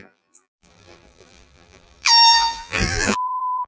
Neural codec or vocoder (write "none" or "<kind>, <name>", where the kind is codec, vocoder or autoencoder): vocoder, BigVGAN v2